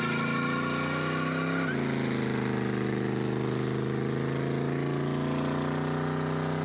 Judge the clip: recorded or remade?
recorded